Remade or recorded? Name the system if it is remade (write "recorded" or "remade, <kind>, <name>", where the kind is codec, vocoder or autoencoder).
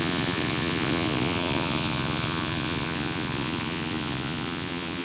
remade, vocoder, Vocos